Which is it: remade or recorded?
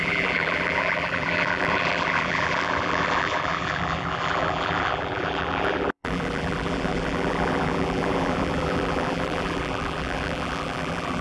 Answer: remade